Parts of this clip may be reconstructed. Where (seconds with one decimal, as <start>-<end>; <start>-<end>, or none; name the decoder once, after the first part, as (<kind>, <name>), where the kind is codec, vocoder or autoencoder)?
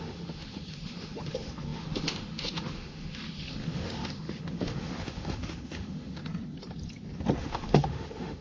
0.0-6.2 (autoencoder, DAC-VAE); 7.4-8.4